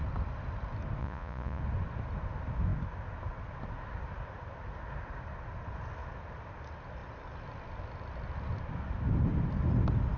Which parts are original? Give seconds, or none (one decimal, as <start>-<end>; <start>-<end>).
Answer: 0.0-1.0; 1.6-10.2